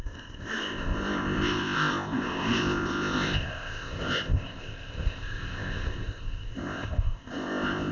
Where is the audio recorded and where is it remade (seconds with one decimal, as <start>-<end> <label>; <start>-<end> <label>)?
0.0-7.9 remade